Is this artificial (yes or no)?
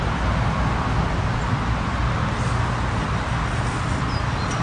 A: no